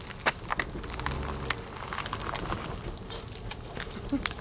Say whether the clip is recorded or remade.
recorded